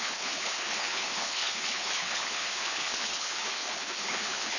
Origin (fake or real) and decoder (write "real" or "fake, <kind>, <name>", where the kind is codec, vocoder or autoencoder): fake, codec, HILCodec